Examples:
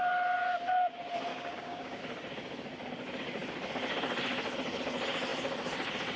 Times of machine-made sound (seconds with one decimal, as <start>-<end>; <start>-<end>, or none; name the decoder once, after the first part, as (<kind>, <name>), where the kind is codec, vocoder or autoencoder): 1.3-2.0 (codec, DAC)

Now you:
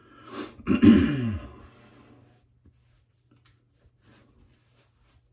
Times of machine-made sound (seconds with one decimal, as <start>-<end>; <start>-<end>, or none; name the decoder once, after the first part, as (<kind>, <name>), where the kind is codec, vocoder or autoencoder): none

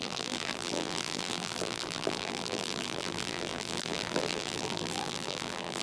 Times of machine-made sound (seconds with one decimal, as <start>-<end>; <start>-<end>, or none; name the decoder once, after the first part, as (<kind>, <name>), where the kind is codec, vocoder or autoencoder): 0.0-5.8 (vocoder, BigVGAN v2)